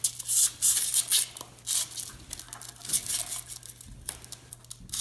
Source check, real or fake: real